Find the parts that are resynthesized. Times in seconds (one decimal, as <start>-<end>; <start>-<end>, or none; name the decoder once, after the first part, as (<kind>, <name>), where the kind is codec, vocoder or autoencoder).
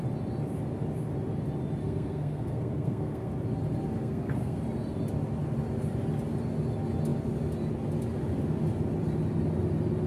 1.8-3.3 (codec, SNAC); 4.0-4.6